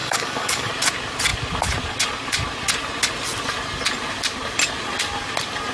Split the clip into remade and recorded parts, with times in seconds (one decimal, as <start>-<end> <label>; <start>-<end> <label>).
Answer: 0.0-0.7 remade; 0.7-5.7 recorded